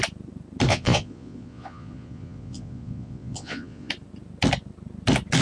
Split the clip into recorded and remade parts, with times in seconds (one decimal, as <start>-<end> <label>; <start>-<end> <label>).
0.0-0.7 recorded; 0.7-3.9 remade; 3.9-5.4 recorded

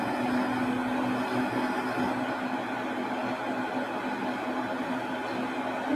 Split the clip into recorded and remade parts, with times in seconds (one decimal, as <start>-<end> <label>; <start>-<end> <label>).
0.0-6.0 recorded

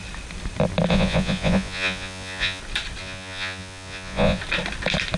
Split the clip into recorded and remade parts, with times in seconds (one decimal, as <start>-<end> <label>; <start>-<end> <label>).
0.0-0.9 recorded; 0.9-2.6 remade; 2.6-3.0 recorded; 3.0-4.4 remade; 4.4-5.2 recorded

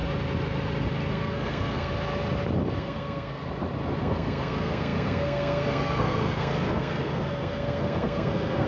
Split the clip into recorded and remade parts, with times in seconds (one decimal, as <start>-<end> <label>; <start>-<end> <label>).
0.0-1.1 recorded; 1.1-1.9 remade; 1.9-2.8 recorded; 2.8-3.4 remade; 3.4-4.0 recorded; 4.0-8.7 remade

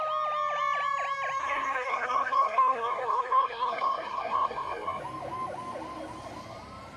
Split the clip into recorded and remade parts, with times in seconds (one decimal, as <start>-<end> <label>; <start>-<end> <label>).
0.0-1.4 recorded; 1.4-5.0 remade; 5.0-7.0 recorded

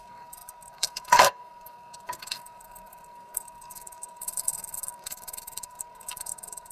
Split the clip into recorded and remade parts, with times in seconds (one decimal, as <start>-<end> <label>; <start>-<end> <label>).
0.0-6.7 remade